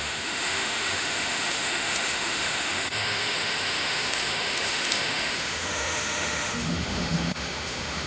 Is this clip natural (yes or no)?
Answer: no